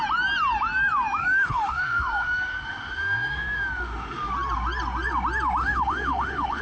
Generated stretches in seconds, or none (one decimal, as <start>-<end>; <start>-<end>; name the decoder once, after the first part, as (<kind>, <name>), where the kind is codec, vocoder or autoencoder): 1.2-4.3 (autoencoder, DAC-VAE); 5.6-6.6